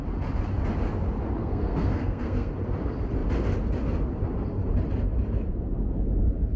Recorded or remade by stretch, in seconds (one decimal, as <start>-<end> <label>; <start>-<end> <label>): 0.0-1.4 recorded; 1.4-2.5 remade; 2.5-6.6 recorded